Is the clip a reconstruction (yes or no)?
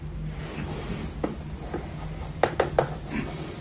no